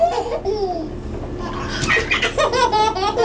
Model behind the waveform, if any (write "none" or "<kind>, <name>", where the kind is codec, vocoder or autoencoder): none